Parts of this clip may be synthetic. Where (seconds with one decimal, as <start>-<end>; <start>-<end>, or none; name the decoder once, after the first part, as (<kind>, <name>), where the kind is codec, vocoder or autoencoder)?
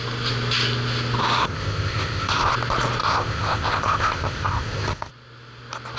1.4-2.5 (codec, ZipCodec); 3.0-5.1